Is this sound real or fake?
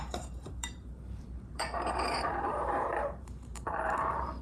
fake